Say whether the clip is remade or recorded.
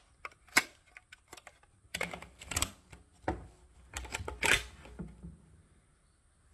recorded